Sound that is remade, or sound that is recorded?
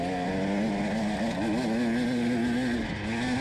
recorded